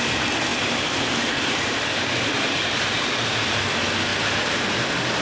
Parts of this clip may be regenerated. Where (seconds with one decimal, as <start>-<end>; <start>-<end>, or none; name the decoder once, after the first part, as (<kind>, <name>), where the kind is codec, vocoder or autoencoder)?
0.5-3.6 (vocoder, BigVGAN v2); 4.1-4.6